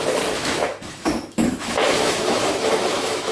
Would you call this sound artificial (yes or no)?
yes